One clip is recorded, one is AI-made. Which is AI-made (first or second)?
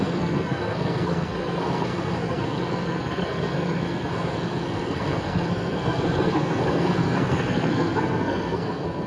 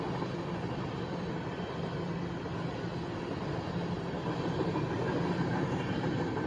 first